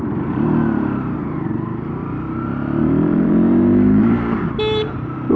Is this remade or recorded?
remade